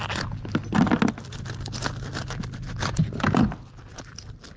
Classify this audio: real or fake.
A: real